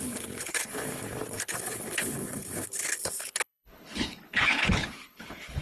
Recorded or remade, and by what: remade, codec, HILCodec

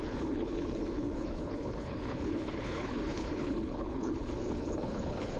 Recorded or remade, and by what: remade, codec, HILCodec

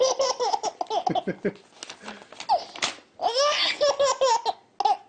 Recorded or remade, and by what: recorded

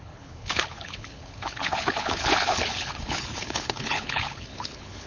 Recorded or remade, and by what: remade, codec, HILCodec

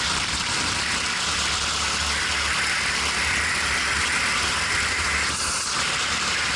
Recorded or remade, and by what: recorded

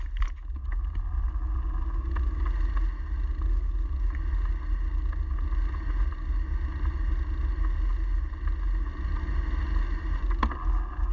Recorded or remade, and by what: recorded